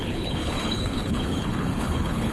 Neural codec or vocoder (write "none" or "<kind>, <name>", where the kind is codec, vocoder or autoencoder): codec, HILCodec